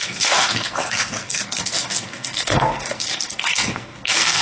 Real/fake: fake